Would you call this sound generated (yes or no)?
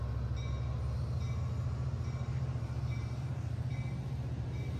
no